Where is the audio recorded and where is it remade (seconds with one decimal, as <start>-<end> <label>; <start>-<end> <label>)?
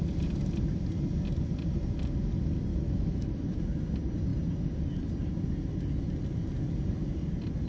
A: 0.0-2.7 recorded; 2.7-3.6 remade; 3.6-7.7 recorded